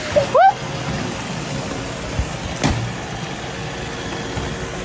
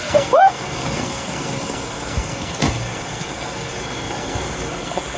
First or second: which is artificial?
second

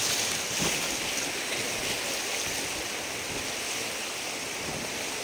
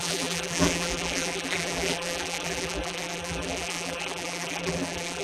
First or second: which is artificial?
second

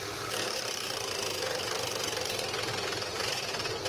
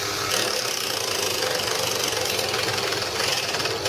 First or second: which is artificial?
first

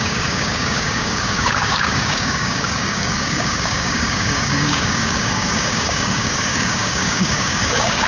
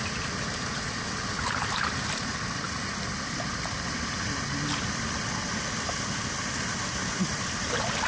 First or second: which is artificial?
first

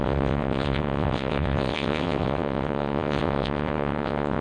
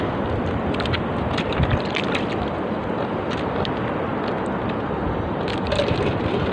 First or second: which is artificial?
first